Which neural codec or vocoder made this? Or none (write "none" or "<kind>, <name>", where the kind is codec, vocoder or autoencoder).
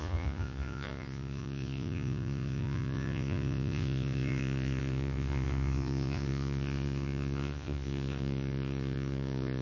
vocoder, Vocos